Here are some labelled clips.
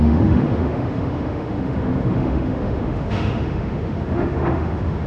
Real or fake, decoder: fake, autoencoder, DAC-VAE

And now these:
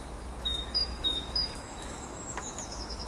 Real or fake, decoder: fake, autoencoder, DAC-VAE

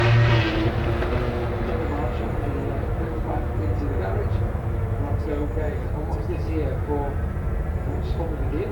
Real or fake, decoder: real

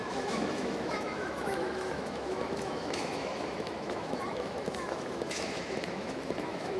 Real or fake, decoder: fake, autoencoder, DAC-VAE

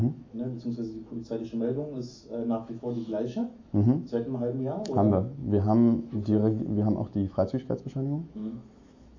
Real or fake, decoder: fake, autoencoder, DAC-VAE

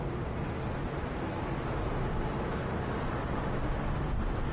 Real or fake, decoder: real